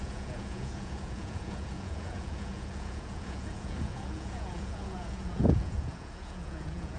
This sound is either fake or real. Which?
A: fake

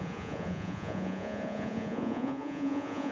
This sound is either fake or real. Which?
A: fake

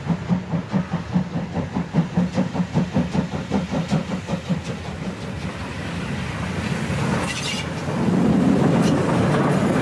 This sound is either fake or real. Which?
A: real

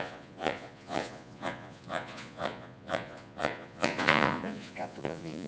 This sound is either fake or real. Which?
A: fake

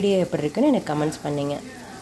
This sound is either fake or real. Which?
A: real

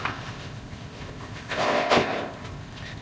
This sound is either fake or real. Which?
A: fake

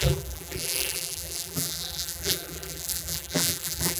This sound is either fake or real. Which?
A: fake